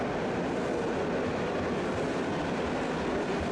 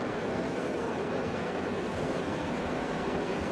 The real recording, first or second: first